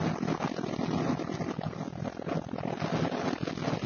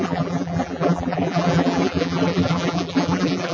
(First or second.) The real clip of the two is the first